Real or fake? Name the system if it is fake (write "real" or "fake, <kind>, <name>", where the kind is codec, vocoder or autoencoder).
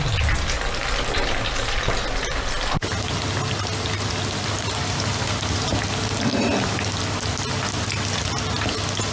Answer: real